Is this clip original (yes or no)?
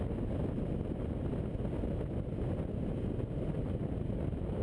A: yes